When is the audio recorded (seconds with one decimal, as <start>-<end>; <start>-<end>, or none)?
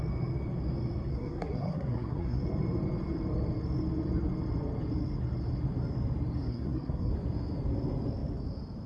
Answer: 0.0-1.1; 2.4-6.5; 7.1-8.9